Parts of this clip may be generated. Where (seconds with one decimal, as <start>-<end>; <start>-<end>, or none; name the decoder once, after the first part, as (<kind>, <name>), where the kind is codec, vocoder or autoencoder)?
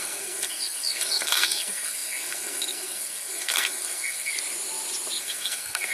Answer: 0.0-4.3 (codec, SNAC); 5.2-5.9